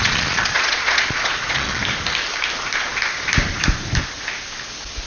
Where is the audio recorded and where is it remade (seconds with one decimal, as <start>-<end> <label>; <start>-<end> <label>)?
0.0-1.8 remade; 1.8-5.1 recorded